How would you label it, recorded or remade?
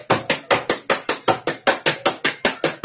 recorded